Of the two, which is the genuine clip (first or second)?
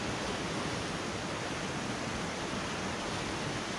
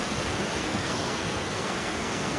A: first